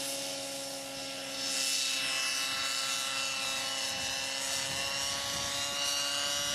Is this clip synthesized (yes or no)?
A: no